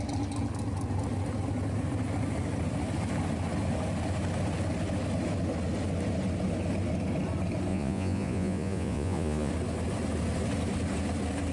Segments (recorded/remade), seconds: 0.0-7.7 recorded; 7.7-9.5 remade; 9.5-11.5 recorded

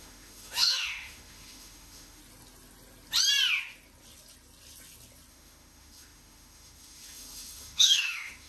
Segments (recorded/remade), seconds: 0.0-2.2 remade; 2.2-5.3 recorded; 5.3-8.5 remade